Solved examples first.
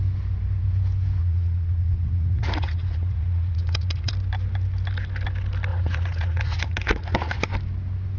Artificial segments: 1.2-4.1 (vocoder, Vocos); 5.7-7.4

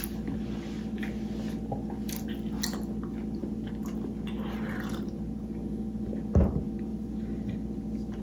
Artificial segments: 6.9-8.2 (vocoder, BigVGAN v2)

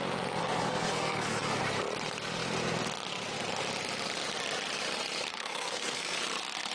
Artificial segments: 0.4-1.6 (codec, SNAC); 5.3-6.2